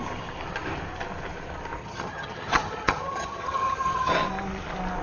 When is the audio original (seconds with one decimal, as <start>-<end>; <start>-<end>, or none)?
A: 0.0-1.8; 4.1-5.0